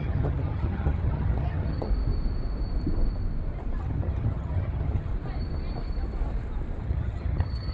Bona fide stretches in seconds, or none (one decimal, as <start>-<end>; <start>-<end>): 1.9-3.8; 5.1-6.8